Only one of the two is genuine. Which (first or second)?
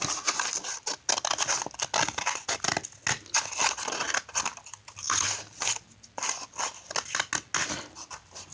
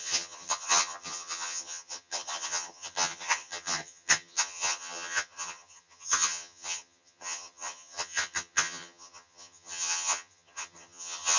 first